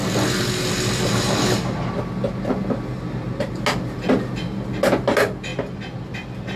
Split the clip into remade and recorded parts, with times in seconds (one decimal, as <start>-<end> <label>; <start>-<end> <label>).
0.0-6.6 recorded